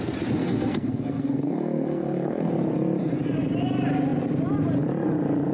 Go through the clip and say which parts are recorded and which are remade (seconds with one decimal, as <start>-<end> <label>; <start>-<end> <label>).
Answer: 0.0-0.4 recorded; 0.4-2.5 remade; 2.5-5.5 recorded